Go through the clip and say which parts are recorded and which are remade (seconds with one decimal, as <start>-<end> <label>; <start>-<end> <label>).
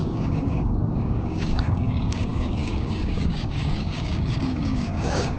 0.0-5.4 remade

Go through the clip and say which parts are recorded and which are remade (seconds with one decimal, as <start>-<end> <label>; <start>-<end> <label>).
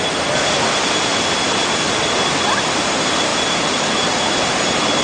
0.0-5.0 recorded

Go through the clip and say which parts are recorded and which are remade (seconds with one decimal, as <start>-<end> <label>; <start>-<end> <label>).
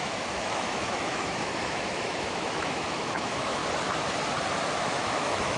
0.0-3.6 remade; 3.6-4.8 recorded; 4.8-5.6 remade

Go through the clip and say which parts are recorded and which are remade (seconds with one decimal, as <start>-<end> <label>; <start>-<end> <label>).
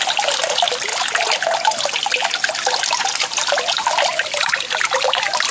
0.0-5.5 recorded